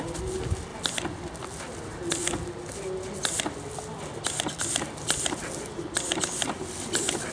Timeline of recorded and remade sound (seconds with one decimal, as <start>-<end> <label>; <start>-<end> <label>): 0.0-7.3 recorded

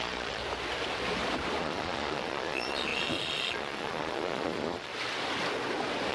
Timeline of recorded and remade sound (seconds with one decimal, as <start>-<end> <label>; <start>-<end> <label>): 0.0-0.4 remade; 0.4-1.6 recorded; 1.6-4.9 remade; 4.9-6.1 recorded